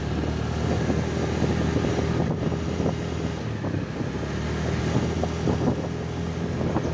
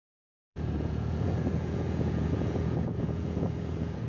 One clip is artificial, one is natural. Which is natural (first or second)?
first